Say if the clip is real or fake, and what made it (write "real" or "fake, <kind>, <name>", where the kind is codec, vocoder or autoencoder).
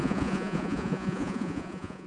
fake, vocoder, Vocos